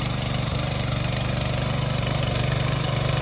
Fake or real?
fake